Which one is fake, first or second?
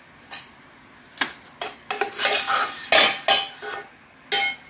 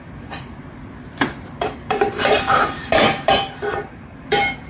second